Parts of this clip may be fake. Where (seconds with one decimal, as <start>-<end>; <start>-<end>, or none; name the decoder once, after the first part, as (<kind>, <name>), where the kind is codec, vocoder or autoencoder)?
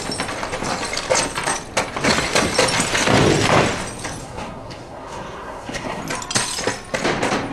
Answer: 4.2-6.0 (codec, SNAC)